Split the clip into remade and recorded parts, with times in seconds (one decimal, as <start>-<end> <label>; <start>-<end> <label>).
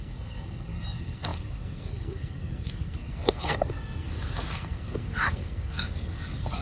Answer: 0.0-6.6 remade